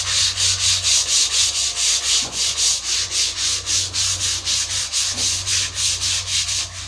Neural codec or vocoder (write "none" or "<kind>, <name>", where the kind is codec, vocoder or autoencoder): vocoder, Vocos